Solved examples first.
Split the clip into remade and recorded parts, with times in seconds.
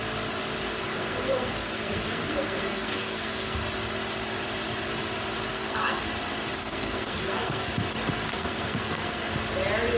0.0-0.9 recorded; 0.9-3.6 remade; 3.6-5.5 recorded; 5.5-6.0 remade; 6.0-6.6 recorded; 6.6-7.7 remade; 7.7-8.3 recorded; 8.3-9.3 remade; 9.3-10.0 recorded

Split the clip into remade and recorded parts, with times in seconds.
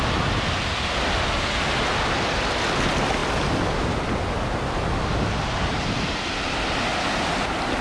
0.0-7.8 recorded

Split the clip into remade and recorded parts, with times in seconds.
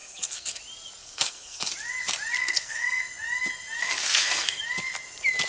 0.0-0.6 remade; 0.6-1.0 recorded; 1.0-1.7 remade; 1.7-2.4 recorded; 2.4-3.0 remade; 3.0-3.8 recorded; 3.8-4.6 remade; 4.6-5.5 recorded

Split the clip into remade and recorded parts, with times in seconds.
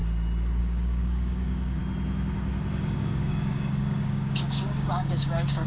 0.0-0.6 recorded; 0.6-1.8 remade; 1.8-2.7 recorded; 2.7-5.7 remade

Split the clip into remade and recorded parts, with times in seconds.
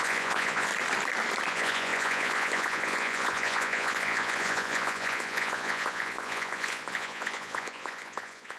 0.0-0.7 remade; 0.7-1.5 recorded; 1.5-8.6 remade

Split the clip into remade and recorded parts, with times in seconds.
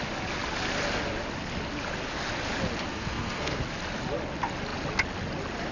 0.0-2.9 recorded; 2.9-3.6 remade; 3.6-5.7 recorded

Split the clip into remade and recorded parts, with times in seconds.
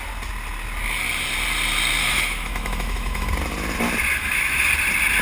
0.0-2.0 recorded; 2.0-3.3 remade; 3.3-4.1 recorded; 4.1-4.7 remade; 4.7-5.2 recorded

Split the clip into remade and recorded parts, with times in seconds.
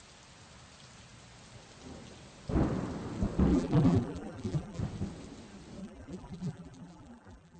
0.0-3.5 recorded; 3.5-4.8 remade; 4.8-5.8 recorded; 5.8-7.6 remade